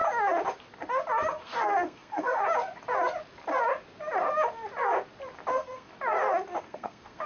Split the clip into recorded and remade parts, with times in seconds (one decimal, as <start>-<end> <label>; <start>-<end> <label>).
0.0-1.3 recorded; 1.3-2.4 remade; 2.4-5.5 recorded; 5.5-5.9 remade; 5.9-6.6 recorded; 6.6-7.3 remade